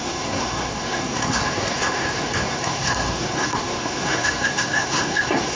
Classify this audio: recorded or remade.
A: remade